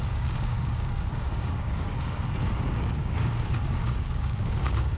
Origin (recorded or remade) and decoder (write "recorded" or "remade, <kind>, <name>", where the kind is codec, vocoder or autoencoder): remade, codec, DAC